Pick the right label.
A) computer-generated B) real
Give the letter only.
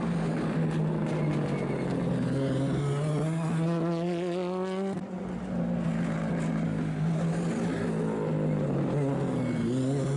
B